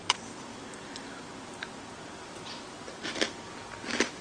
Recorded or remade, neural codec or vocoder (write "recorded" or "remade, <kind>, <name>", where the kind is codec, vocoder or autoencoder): recorded